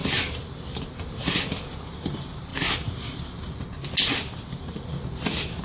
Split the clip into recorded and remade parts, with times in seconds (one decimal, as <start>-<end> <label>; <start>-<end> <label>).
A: 0.0-5.6 recorded